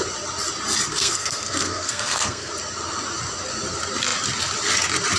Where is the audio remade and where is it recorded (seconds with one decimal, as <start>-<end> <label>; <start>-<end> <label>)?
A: 0.0-0.9 recorded; 0.9-2.5 remade; 2.5-5.2 recorded